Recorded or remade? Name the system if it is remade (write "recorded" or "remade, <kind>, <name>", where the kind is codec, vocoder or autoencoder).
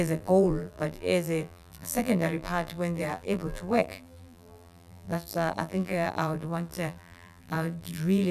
remade, vocoder, BigVGAN v2